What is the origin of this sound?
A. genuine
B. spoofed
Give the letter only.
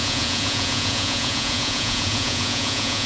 B